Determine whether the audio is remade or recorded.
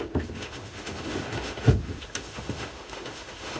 remade